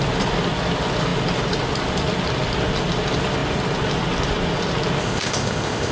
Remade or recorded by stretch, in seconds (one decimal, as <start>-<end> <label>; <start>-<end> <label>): 0.0-5.0 recorded; 5.0-5.9 remade